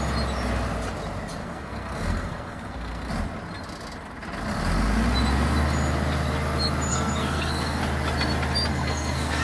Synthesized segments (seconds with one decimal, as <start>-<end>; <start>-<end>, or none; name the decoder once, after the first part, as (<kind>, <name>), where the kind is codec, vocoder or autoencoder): 1.4-3.1 (codec, SNAC); 6.9-7.8; 8.7-9.4